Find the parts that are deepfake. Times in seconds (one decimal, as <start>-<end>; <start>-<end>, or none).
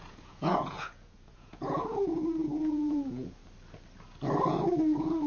0.0-3.4